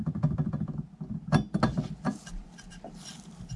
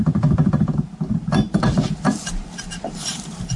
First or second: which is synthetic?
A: second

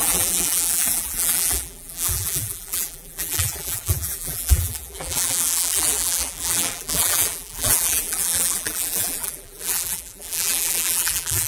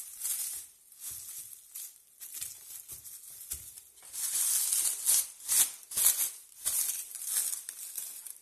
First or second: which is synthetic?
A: first